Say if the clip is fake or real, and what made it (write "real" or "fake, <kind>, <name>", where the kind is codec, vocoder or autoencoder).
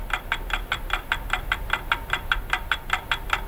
real